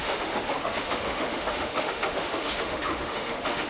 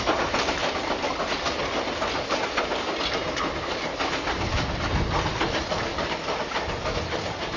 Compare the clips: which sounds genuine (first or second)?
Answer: second